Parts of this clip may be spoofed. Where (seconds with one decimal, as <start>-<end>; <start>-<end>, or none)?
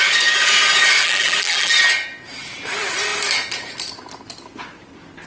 1.0-1.7